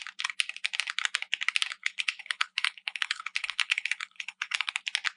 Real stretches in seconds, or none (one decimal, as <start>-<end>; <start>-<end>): 0.0-1.8; 4.7-5.2